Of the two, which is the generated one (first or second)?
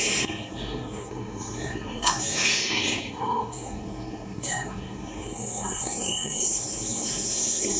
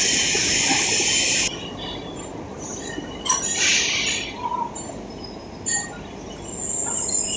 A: first